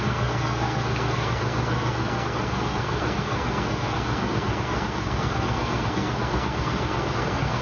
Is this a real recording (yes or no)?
no